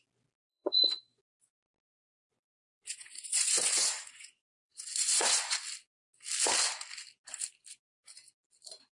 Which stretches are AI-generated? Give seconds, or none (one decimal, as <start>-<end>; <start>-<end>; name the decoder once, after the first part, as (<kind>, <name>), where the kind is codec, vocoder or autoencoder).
0.5-1.2 (vocoder, Vocos); 1.9-5.6